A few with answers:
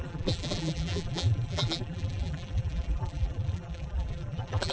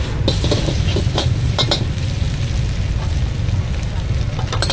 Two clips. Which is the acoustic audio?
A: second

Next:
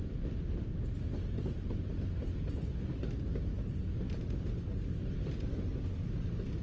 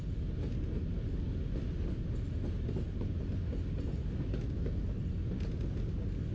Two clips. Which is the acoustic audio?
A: second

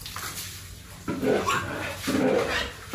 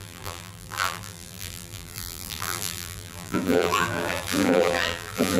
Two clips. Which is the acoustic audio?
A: first